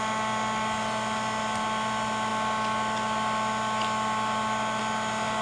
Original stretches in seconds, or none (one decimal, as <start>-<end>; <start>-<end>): 0.0-5.4